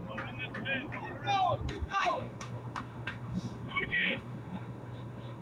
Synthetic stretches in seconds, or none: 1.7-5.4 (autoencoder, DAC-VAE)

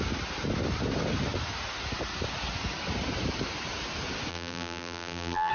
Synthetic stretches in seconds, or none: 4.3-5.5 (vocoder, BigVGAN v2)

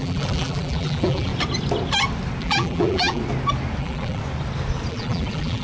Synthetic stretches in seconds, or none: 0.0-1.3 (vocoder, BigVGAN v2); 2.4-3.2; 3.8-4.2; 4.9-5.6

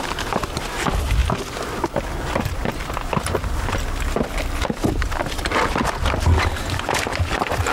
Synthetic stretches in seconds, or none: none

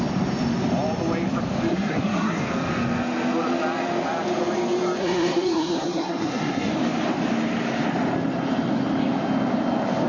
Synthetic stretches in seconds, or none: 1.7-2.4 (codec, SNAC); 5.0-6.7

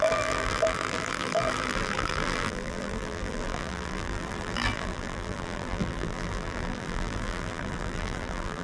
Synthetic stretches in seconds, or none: 0.0-8.6 (vocoder, BigVGAN v2)